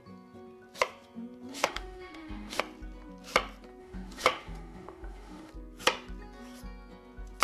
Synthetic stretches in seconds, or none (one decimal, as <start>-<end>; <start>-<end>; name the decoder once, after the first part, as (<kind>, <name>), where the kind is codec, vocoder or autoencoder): 1.5-2.6 (autoencoder, DAC-VAE); 3.8-5.5